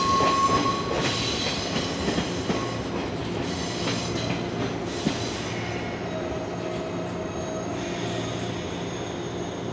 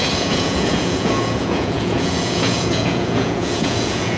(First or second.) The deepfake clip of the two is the second